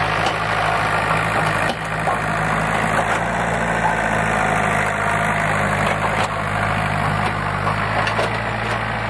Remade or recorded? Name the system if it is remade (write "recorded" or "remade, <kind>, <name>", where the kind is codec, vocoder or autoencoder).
recorded